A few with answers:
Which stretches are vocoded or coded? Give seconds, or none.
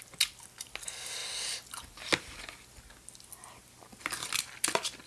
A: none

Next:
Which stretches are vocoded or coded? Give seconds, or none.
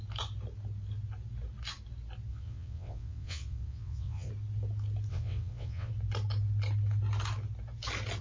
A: 2.3-4.3 (vocoder, WaveNeXt); 5.1-5.9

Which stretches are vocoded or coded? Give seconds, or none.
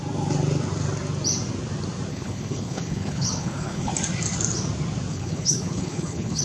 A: 2.1-3.9 (codec, HILCodec); 5.1-6.4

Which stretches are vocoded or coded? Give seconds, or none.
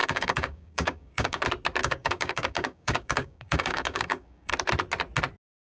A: 0.0-1.4 (codec, DAC); 1.8-4.5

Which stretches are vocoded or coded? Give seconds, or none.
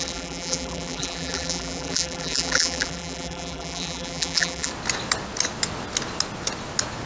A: 0.0-4.7 (vocoder, BigVGAN v2)